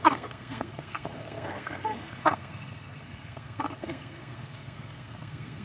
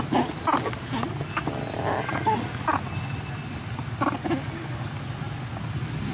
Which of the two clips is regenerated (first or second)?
first